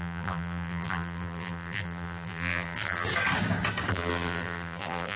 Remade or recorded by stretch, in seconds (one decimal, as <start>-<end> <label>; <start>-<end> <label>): 0.0-3.1 remade; 3.1-3.9 recorded; 3.9-5.2 remade